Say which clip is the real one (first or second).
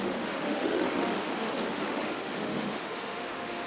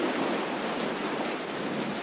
second